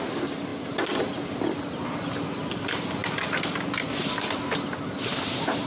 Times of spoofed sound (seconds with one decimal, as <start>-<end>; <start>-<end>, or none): none

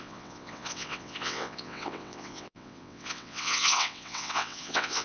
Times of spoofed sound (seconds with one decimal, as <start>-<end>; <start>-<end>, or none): 0.0-5.0

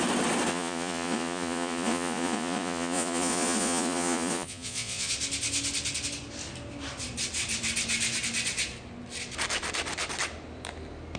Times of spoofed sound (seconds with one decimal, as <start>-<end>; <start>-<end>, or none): 0.5-5.1

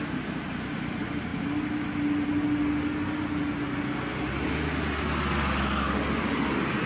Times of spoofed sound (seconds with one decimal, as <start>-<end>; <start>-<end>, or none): 1.3-2.3

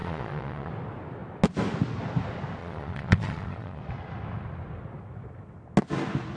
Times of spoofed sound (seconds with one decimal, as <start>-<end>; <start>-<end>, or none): 0.0-0.7; 2.6-3.8

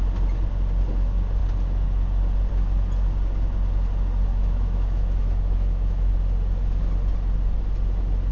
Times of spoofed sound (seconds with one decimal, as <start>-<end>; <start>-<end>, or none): 4.3-6.1

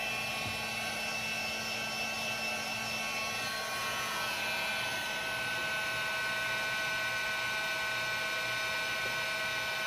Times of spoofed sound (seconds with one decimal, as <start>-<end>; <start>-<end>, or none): 3.8-4.7

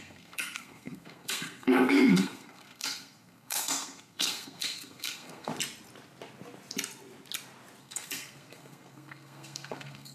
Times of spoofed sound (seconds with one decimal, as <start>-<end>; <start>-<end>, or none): 0.0-5.5; 7.8-10.1